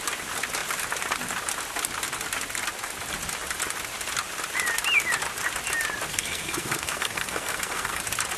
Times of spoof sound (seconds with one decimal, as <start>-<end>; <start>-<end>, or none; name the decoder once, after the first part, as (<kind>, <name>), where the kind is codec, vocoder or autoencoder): 6.1-8.0 (codec, SNAC)